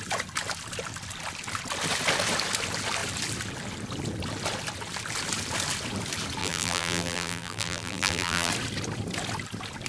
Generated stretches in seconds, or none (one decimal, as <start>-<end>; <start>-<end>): 6.4-8.5